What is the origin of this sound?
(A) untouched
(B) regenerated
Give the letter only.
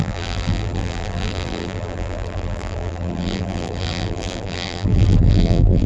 B